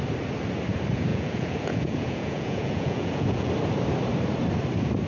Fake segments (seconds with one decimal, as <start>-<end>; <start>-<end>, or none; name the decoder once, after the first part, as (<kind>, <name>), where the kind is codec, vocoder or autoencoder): 1.1-3.5 (vocoder, Vocos)